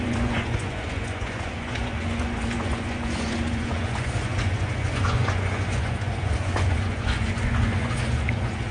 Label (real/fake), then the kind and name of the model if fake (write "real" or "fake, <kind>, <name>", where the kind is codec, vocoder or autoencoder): fake, vocoder, Vocos